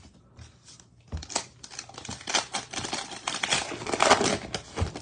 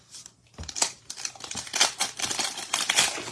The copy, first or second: second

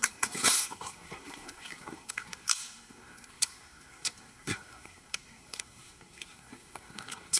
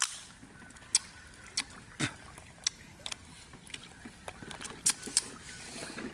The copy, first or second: first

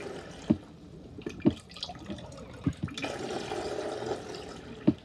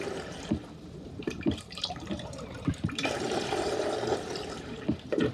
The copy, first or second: second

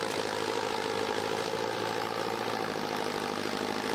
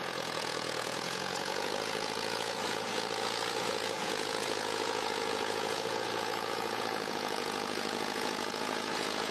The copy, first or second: second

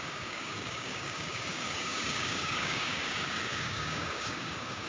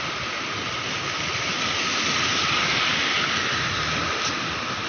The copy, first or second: first